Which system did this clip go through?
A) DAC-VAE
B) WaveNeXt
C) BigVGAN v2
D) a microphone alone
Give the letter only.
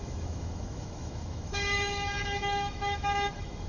A